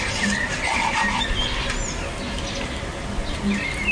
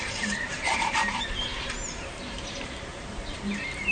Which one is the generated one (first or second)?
second